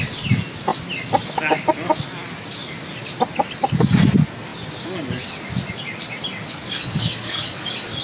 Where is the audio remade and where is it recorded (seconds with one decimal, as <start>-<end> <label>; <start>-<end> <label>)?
0.0-6.4 recorded; 6.4-8.0 remade